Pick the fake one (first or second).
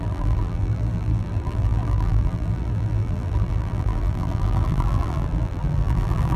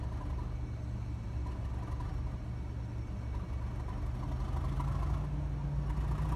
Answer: first